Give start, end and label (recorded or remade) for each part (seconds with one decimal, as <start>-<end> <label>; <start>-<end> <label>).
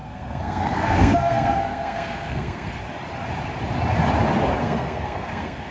0.0-2.8 remade; 2.8-4.6 recorded; 4.6-5.7 remade